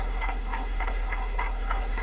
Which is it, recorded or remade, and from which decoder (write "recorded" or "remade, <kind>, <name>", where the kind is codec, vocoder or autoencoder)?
remade, codec, SNAC